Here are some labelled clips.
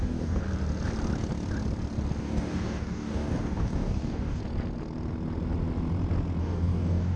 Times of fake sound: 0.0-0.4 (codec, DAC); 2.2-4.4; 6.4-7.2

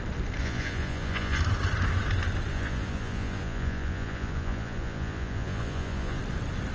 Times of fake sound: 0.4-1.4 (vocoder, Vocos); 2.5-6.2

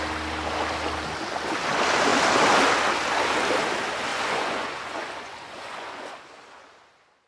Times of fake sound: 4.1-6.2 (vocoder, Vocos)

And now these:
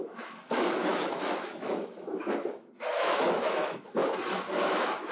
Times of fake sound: 0.0-4.0 (autoencoder, DAC-VAE); 4.5-5.1